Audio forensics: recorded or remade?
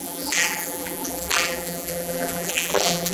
remade